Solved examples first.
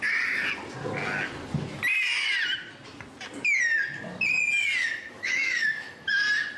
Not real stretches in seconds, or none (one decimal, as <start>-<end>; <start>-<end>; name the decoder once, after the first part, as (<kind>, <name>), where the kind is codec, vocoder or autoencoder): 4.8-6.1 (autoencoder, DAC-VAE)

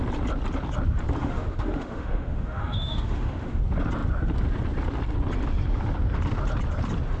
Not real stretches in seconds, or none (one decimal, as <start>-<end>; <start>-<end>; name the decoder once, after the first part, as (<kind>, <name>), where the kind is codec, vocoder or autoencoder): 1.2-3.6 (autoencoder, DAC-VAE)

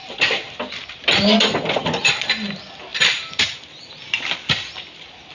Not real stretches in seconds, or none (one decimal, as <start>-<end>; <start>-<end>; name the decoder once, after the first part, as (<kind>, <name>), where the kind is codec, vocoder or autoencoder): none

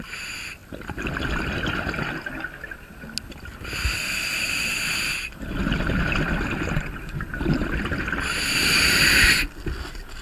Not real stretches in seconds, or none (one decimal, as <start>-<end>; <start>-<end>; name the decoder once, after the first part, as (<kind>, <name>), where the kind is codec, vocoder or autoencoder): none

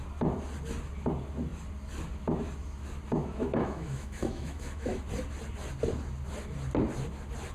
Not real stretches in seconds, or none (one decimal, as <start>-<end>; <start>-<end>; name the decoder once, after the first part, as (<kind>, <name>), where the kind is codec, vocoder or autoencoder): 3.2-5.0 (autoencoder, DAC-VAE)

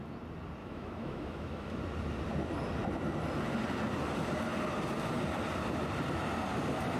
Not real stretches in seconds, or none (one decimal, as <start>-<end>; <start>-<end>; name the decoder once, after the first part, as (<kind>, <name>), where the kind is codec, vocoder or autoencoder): 0.6-1.8 (autoencoder, DAC-VAE)